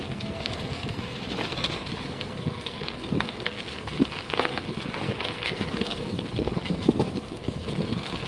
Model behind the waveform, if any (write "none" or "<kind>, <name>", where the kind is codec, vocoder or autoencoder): codec, SNAC